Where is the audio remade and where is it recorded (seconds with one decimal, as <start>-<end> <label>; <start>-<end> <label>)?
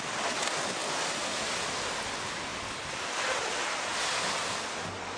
0.0-5.2 recorded